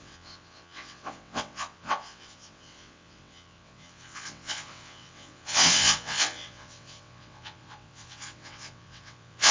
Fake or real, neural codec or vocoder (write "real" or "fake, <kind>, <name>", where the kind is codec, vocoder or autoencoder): fake, vocoder, WaveNeXt